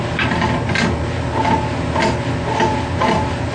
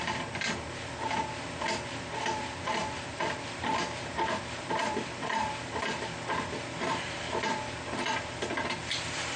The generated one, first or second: second